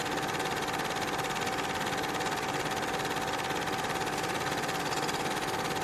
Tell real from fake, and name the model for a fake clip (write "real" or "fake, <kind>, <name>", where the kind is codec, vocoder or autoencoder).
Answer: real